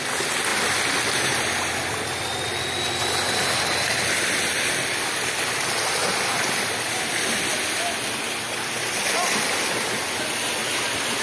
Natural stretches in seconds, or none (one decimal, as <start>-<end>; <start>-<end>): 0.0-6.0; 7.1-11.2